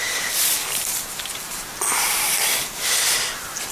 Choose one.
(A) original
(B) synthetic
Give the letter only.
B